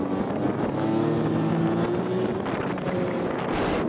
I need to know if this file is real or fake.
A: real